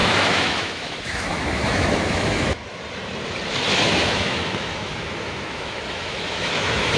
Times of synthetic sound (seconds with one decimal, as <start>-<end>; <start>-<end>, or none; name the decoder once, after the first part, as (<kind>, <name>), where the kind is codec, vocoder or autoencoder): 0.0-2.6 (autoencoder, DAC-VAE); 3.8-7.0